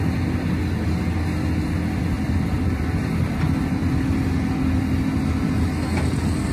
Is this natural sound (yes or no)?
yes